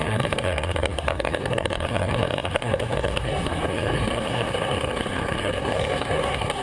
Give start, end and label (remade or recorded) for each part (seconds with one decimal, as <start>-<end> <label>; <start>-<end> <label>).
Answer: 0.0-6.6 remade